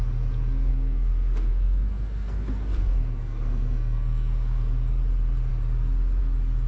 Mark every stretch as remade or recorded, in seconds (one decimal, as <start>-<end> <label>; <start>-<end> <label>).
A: 0.0-0.7 recorded; 0.7-4.7 remade; 4.7-6.7 recorded

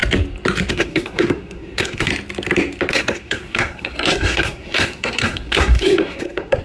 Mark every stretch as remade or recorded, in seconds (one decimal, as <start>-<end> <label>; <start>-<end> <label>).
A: 0.0-0.7 recorded; 0.7-2.1 remade; 2.1-2.9 recorded; 2.9-6.6 remade